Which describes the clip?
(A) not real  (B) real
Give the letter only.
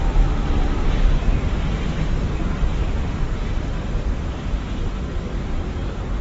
A